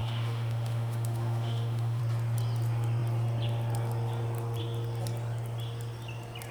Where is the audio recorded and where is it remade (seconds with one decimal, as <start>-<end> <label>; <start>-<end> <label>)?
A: 0.0-2.0 remade; 2.0-6.5 recorded